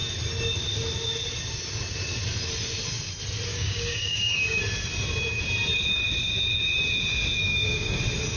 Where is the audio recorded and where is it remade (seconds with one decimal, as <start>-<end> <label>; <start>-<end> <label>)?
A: 0.0-3.5 recorded; 3.5-4.6 remade; 4.6-7.4 recorded; 7.4-8.0 remade; 8.0-8.4 recorded